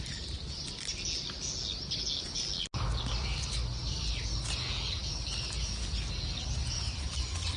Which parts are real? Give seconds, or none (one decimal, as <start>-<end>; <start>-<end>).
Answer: 0.0-7.6